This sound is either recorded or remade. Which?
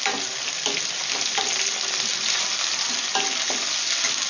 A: recorded